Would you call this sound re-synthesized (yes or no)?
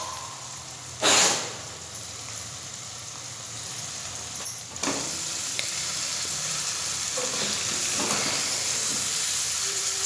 yes